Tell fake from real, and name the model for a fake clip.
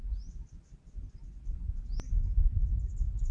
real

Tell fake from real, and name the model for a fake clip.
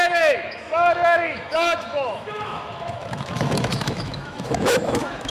fake, autoencoder, DAC-VAE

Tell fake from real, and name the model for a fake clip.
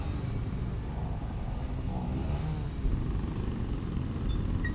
real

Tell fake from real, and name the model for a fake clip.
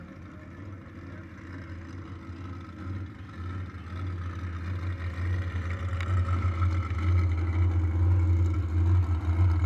real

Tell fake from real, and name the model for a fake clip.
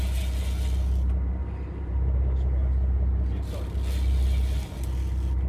real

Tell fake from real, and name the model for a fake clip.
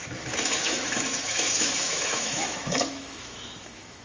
fake, autoencoder, DAC-VAE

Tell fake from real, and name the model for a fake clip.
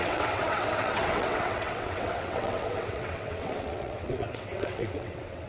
fake, vocoder, WaveNeXt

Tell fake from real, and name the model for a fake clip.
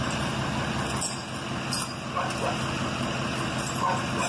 real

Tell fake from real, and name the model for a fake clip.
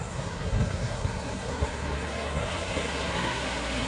fake, codec, SNAC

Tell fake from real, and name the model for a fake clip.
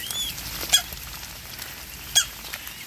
real